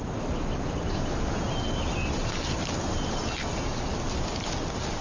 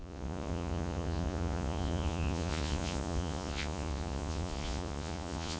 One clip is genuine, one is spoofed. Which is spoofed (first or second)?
second